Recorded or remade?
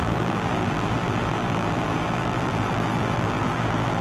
remade